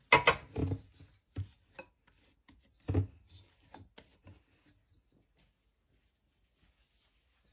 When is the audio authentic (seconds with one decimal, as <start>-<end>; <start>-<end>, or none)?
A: 0.0-7.5